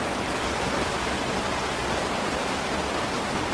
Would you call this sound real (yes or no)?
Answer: yes